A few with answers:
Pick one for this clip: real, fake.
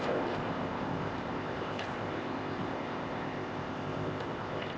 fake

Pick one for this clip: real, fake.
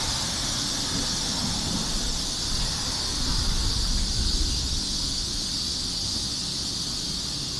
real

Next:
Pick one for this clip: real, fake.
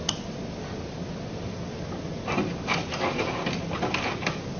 real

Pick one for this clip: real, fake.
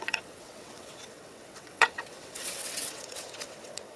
fake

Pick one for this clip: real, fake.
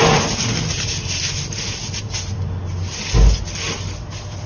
real